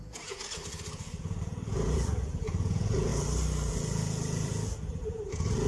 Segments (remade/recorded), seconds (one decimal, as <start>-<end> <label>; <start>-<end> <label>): 0.0-0.6 remade; 0.6-1.2 recorded; 1.2-3.1 remade; 3.1-3.7 recorded; 3.7-5.7 remade